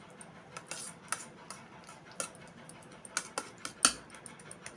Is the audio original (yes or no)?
yes